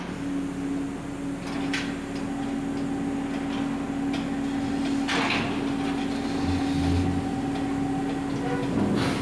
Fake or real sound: real